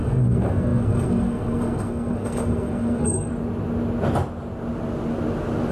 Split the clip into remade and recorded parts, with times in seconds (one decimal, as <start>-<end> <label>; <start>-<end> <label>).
0.0-3.3 remade; 3.3-5.7 recorded